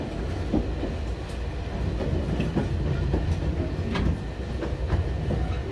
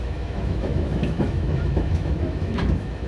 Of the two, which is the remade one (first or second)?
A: second